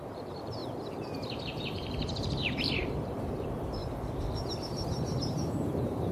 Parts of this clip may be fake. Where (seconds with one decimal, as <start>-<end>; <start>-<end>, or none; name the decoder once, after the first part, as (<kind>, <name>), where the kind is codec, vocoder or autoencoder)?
0.0-0.6 (vocoder, BigVGAN v2); 1.4-3.8; 4.6-6.1

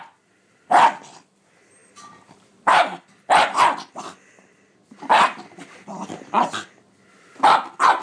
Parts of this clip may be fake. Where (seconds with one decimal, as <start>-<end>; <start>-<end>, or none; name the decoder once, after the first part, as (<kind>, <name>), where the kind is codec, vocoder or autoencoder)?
1.8-3.0 (vocoder, BigVGAN v2)